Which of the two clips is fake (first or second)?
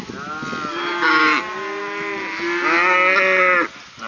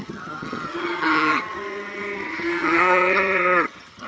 second